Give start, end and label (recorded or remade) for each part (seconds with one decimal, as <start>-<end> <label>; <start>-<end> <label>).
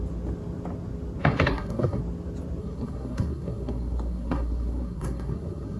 0.0-1.2 recorded; 1.2-2.0 remade; 2.0-2.6 recorded; 2.6-5.8 remade